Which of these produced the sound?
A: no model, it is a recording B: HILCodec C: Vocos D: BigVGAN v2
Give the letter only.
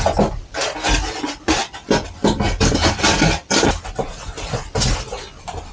A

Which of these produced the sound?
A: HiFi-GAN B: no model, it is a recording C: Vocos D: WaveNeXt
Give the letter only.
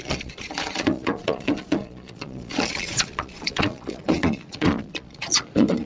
C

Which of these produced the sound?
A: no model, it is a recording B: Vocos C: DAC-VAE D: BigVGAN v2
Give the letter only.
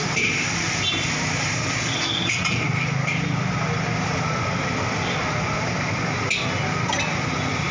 A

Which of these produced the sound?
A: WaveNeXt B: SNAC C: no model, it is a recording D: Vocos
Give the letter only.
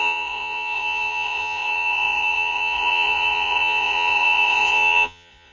D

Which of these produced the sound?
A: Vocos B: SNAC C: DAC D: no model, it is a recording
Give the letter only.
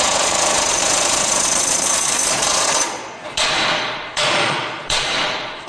A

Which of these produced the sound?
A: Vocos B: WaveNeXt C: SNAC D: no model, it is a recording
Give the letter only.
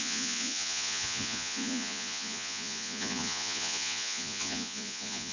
A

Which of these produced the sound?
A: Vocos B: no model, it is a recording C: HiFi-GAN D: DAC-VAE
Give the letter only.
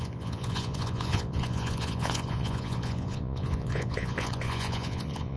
A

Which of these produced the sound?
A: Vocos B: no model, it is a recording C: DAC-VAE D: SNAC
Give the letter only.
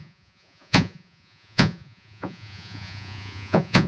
A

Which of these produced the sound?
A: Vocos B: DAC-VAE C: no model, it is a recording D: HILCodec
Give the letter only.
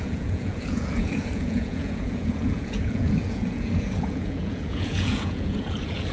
A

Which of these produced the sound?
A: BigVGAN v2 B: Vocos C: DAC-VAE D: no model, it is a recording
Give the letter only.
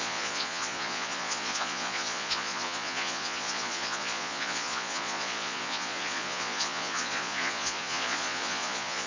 B